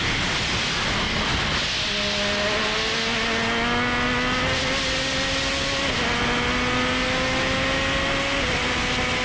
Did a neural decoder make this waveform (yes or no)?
no